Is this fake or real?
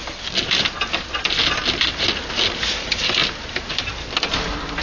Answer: real